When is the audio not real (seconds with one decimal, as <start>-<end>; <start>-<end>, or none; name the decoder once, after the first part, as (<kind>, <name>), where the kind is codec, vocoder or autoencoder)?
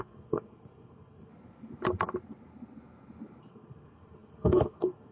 0.0-1.3 (codec, SNAC); 3.4-5.1